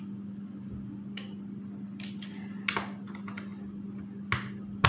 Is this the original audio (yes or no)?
yes